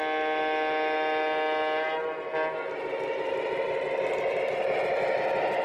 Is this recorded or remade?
recorded